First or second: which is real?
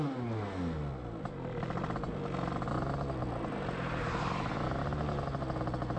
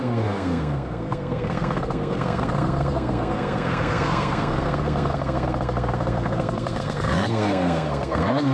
first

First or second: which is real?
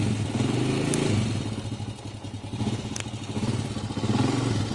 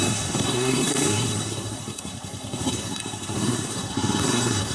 first